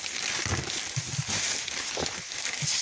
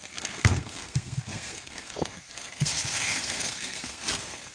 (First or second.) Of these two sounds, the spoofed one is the second